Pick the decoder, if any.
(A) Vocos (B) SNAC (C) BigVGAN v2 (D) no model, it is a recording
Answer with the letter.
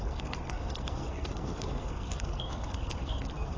B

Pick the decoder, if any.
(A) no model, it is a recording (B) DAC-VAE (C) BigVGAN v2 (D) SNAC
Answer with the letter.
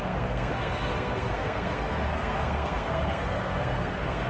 D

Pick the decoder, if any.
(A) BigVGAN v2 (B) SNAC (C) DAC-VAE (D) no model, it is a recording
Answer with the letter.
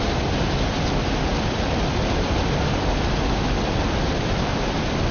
D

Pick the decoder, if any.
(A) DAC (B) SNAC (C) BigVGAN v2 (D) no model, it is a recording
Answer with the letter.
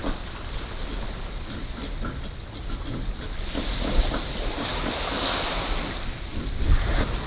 D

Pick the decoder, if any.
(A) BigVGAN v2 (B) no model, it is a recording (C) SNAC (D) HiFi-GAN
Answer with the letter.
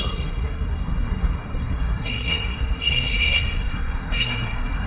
C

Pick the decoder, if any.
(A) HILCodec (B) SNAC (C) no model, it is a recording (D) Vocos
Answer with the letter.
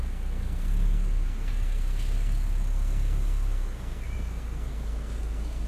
B